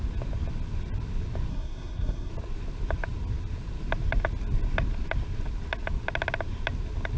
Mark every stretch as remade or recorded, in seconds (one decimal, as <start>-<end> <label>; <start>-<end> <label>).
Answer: 0.0-1.5 recorded; 1.5-2.3 remade; 2.3-7.2 recorded